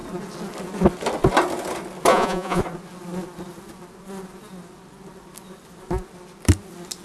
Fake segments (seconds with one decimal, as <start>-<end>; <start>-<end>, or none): 2.1-2.6